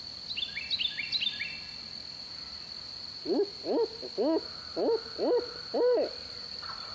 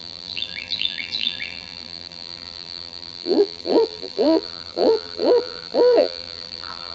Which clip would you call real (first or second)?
first